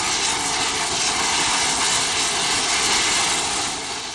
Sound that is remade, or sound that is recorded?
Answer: recorded